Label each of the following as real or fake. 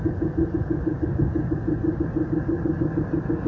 real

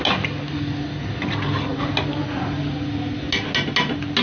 real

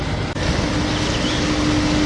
real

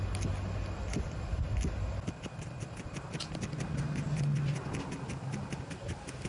real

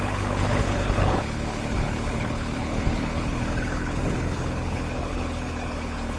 fake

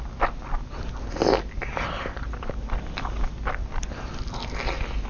real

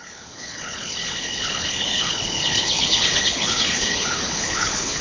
fake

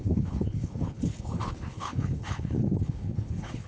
fake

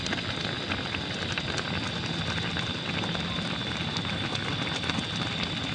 real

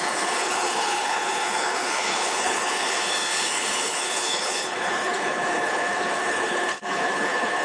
fake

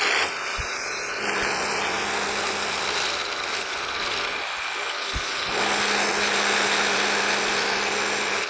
real